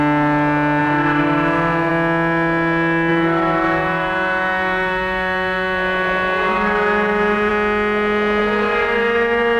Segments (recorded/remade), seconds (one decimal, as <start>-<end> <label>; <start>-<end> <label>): 0.0-0.8 recorded; 0.8-1.9 remade; 1.9-3.1 recorded; 3.1-7.5 remade; 7.5-8.4 recorded; 8.4-9.6 remade